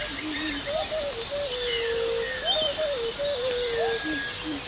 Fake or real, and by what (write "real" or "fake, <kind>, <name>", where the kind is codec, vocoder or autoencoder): real